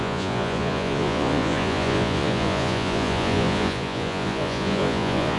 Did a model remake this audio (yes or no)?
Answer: yes